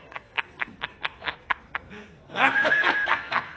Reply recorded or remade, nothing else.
remade